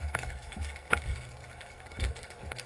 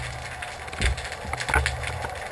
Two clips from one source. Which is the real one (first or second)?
second